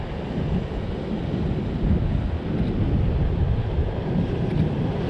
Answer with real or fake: real